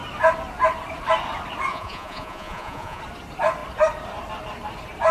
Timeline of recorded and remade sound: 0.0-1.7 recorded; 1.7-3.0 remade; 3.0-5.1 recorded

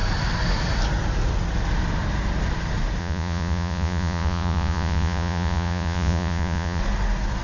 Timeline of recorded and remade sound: 0.0-3.0 recorded; 3.0-6.8 remade; 6.8-7.4 recorded

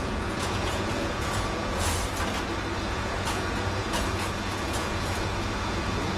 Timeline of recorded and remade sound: 0.0-2.0 remade; 2.0-2.8 recorded; 2.8-6.2 remade

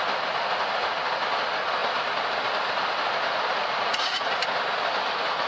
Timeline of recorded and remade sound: 0.0-3.6 recorded; 3.6-4.2 remade; 4.2-5.5 recorded